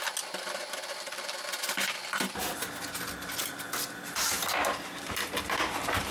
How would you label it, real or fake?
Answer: real